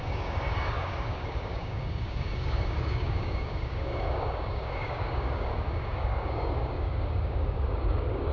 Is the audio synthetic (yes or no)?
yes